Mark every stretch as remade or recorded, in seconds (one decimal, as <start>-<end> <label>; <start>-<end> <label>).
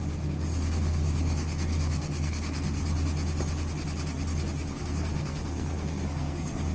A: 0.0-2.8 remade; 2.8-4.8 recorded; 4.8-6.7 remade